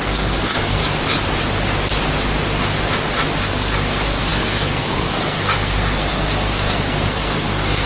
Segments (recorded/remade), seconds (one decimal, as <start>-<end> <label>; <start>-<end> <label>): 0.0-0.8 remade; 0.8-3.4 recorded; 3.4-7.9 remade